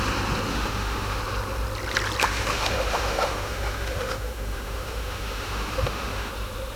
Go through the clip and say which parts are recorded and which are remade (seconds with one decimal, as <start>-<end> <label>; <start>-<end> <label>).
0.0-0.5 recorded; 0.5-1.2 remade; 1.2-2.2 recorded; 2.2-6.3 remade; 6.3-6.8 recorded